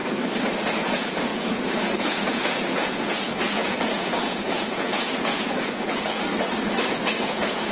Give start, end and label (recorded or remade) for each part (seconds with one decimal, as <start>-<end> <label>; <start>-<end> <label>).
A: 0.0-0.8 recorded; 0.8-6.3 remade; 6.3-6.9 recorded; 6.9-7.7 remade